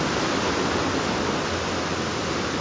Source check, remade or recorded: recorded